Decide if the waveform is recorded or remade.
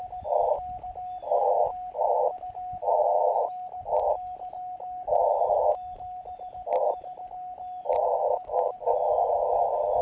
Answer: recorded